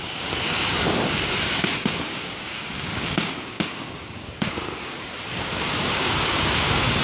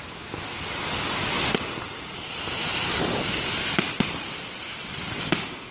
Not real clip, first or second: first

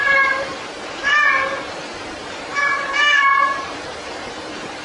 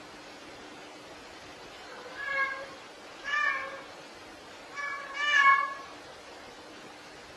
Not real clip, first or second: first